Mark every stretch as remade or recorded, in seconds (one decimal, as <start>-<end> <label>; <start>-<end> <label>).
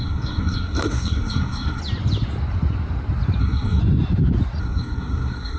0.0-1.8 remade; 1.8-3.4 recorded; 3.4-3.8 remade; 3.8-4.6 recorded; 4.6-5.6 remade